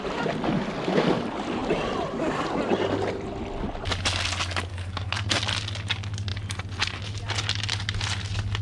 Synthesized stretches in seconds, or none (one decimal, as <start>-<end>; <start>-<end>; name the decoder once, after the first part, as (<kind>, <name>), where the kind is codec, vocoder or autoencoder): 4.7-5.4 (codec, SNAC)